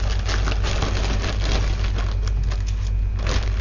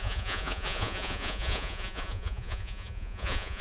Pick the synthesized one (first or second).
second